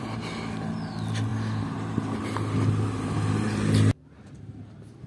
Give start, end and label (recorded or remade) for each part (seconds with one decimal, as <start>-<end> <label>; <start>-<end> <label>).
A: 0.0-5.1 recorded